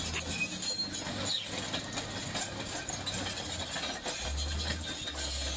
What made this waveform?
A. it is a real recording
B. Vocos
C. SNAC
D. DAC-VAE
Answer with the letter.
A